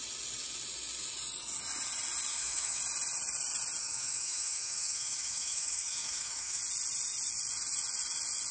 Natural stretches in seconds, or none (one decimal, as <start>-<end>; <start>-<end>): 0.0-2.3; 2.8-3.8; 6.6-8.5